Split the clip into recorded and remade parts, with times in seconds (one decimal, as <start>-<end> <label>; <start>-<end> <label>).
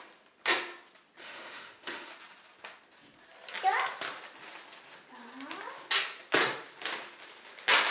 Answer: 0.0-1.2 recorded; 1.2-2.1 remade; 2.1-7.9 recorded